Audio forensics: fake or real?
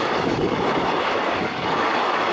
fake